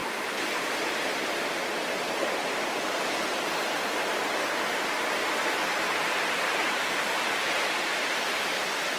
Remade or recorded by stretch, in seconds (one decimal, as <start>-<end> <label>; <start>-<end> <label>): 0.0-3.2 remade; 3.2-5.2 recorded; 5.2-6.8 remade; 6.8-9.0 recorded